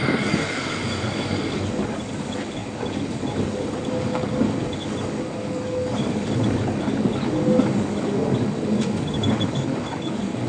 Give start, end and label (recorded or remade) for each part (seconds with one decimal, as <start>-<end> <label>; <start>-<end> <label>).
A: 0.0-10.5 remade